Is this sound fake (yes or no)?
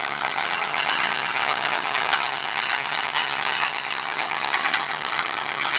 yes